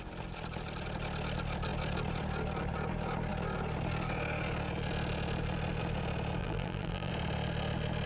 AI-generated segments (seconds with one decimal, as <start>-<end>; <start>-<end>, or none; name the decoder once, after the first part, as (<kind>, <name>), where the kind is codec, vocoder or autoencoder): 6.4-7.1 (vocoder, BigVGAN v2)